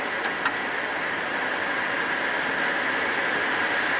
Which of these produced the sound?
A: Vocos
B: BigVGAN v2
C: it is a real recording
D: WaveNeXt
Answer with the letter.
C